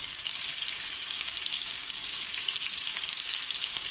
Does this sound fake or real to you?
fake